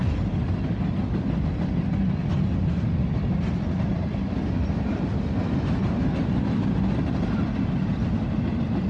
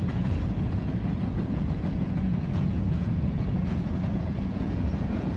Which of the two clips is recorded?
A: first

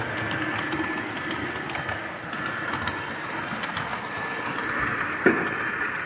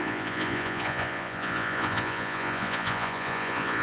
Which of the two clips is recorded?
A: first